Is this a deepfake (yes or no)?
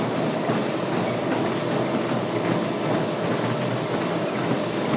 no